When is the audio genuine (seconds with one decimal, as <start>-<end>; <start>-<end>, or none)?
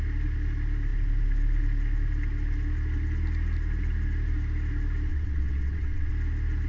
0.0-5.1; 6.1-6.7